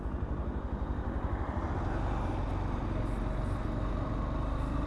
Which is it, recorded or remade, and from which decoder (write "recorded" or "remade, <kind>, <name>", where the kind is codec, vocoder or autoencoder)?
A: recorded